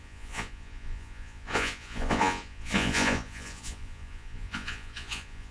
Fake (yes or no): yes